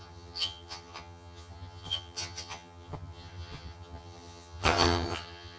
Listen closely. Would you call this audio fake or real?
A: fake